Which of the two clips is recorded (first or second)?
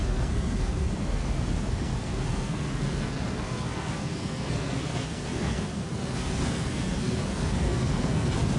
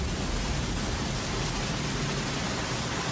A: second